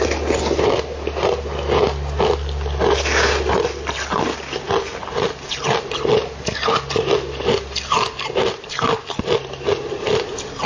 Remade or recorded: recorded